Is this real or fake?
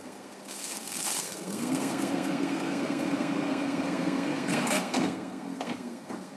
fake